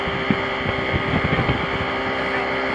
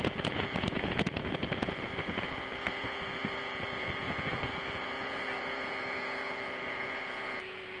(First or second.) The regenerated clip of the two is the second